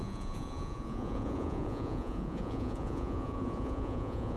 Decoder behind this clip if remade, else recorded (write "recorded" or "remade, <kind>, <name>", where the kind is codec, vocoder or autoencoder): remade, vocoder, Vocos